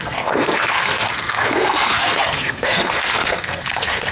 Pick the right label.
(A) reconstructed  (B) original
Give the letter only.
A